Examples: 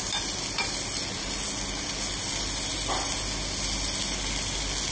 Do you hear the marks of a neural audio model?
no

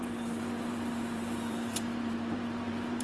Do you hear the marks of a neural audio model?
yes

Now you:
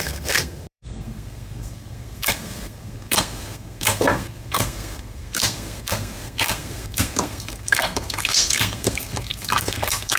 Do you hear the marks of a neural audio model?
yes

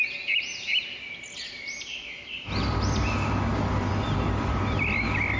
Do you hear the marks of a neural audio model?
yes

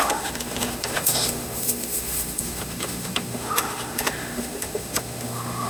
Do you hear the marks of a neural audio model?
yes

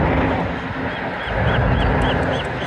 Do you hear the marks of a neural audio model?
no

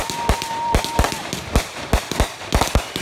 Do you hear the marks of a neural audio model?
no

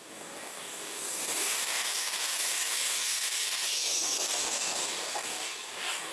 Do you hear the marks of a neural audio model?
yes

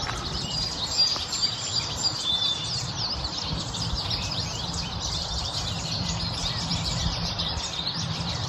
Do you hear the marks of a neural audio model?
yes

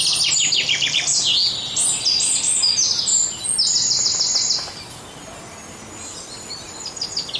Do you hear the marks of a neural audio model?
no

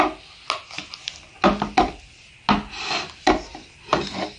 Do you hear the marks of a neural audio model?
no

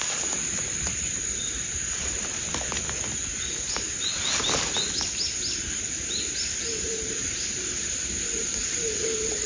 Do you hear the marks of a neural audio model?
no